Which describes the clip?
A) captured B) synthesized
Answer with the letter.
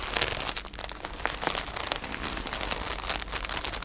A